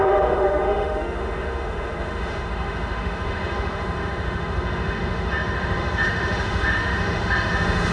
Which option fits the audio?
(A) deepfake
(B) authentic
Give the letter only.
A